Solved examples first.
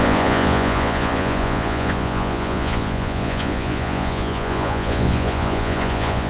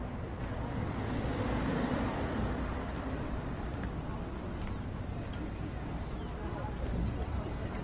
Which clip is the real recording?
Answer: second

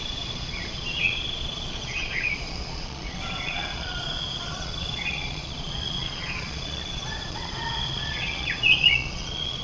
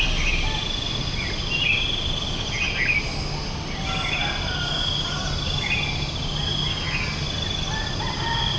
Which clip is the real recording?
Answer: second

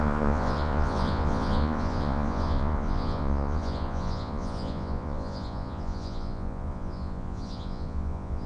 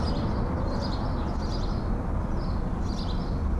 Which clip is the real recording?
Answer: second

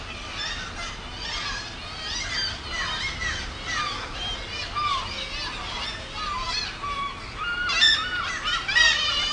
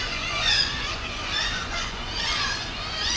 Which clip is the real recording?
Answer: first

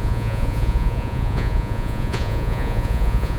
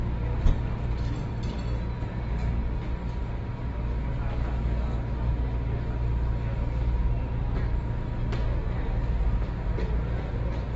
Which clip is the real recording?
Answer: second